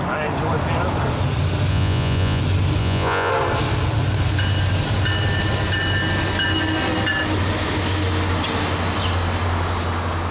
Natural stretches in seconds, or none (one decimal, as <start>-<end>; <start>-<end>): 0.0-1.7; 2.4-2.8; 3.3-10.3